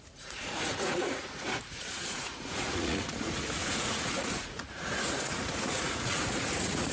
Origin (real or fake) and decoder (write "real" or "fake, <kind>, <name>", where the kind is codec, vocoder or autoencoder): fake, vocoder, Vocos